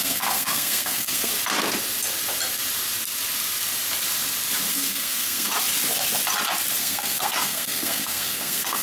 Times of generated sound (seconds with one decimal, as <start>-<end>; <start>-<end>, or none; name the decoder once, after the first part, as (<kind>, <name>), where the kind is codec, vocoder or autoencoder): 0.0-1.3 (codec, SNAC); 4.7-5.5; 6.8-8.8